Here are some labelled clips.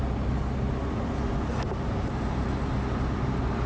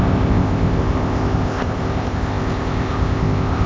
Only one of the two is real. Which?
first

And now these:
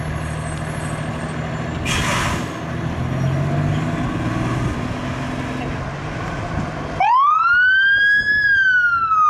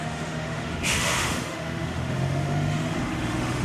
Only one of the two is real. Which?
first